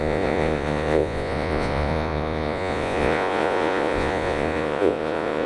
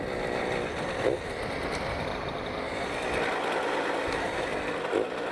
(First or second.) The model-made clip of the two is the first